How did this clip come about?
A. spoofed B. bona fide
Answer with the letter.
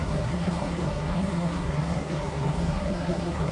A